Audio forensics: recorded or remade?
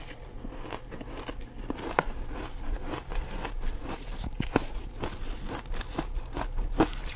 recorded